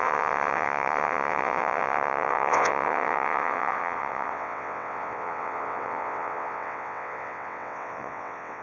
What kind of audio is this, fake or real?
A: fake